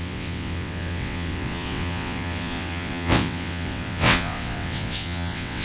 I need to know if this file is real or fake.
fake